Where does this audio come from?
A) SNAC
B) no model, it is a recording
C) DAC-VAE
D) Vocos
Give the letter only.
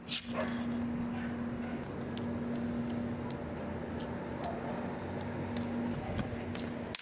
B